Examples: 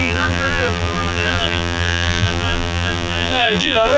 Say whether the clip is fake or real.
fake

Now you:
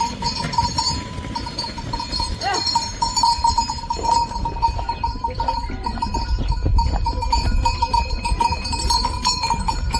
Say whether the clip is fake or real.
fake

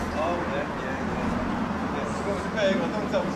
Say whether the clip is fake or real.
real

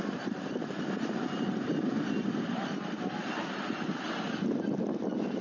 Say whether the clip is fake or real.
fake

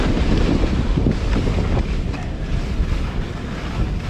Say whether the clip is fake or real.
real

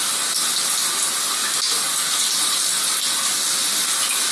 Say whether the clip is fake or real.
real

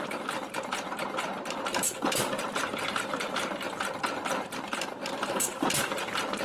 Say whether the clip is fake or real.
fake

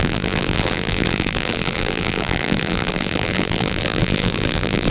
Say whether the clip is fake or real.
fake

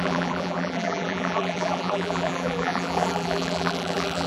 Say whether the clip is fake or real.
fake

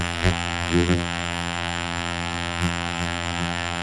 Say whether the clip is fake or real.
fake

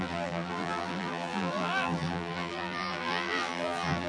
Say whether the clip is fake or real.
fake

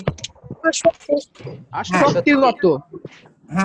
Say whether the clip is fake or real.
real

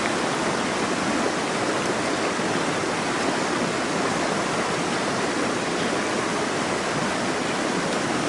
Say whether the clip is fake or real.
real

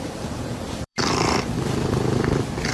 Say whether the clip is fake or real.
fake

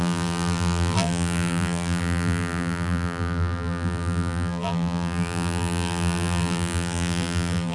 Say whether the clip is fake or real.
fake